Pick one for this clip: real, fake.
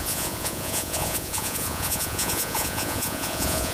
fake